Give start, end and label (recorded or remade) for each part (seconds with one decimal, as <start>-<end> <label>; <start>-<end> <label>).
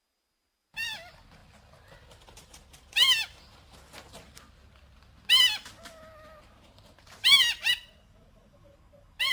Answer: 0.0-9.3 recorded